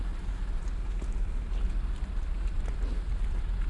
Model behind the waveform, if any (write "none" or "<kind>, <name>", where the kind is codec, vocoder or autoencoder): none